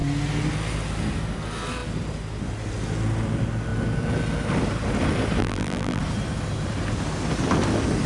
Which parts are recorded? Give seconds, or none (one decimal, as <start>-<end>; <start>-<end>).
0.0-5.4; 6.0-8.1

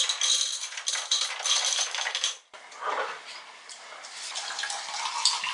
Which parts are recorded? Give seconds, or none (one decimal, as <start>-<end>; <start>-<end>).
none

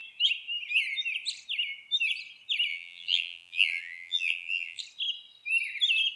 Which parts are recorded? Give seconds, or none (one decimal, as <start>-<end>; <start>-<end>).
0.0-2.7; 4.8-6.2

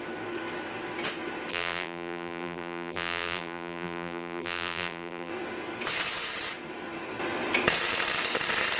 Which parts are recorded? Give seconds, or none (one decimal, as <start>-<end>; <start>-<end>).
0.0-1.5; 5.3-8.8

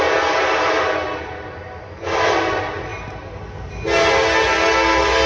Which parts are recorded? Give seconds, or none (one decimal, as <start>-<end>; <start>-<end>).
none

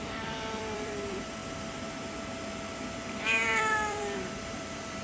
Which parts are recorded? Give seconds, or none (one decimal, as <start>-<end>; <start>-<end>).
1.4-2.9